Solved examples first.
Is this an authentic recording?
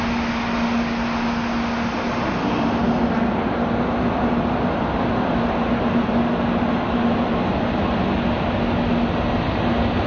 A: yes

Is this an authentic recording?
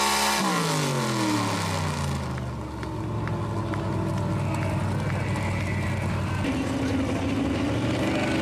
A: yes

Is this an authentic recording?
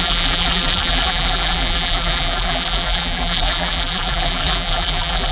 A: no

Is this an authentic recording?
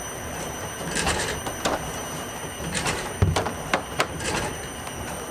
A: no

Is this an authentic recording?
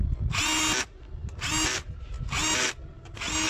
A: yes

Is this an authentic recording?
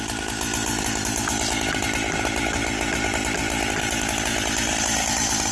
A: yes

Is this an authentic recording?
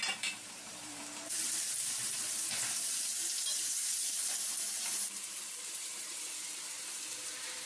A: no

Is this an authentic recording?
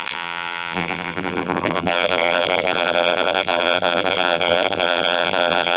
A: no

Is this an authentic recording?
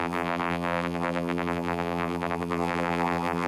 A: no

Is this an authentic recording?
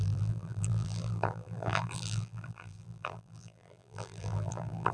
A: no